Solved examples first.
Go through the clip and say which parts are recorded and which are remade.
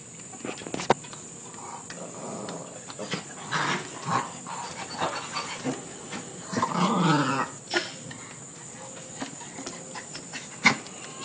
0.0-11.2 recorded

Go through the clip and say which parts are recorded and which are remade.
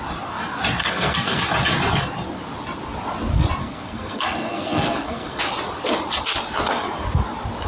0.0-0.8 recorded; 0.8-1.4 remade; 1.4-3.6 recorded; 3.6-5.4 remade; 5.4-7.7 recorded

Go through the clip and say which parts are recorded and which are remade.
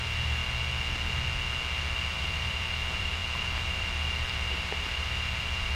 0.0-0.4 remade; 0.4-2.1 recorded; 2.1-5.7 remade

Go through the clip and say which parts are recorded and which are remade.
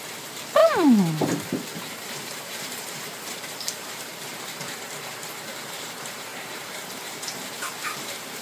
0.0-0.6 remade; 0.6-1.9 recorded; 1.9-8.4 remade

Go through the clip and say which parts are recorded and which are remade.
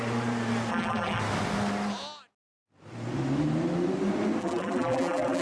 0.0-0.7 recorded; 0.7-1.2 remade; 1.2-4.4 recorded; 4.4-5.4 remade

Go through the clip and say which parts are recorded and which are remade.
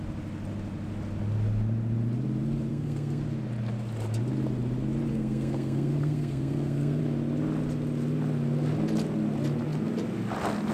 0.0-2.7 recorded; 2.7-3.2 remade; 3.2-5.1 recorded; 5.1-7.0 remade; 7.0-10.7 recorded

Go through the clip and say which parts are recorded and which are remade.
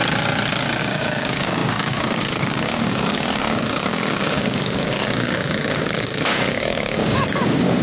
0.0-0.8 recorded; 0.8-7.8 remade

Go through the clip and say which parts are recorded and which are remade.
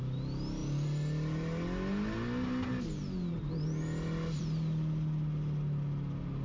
0.0-6.4 recorded